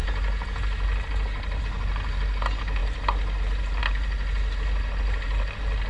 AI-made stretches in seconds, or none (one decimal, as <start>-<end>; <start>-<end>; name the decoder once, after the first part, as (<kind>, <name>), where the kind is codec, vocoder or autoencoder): none